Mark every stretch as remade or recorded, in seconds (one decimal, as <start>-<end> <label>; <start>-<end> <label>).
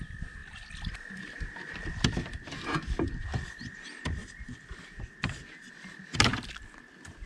0.0-4.2 recorded; 4.2-5.7 remade; 5.7-7.3 recorded